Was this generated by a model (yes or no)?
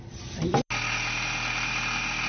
no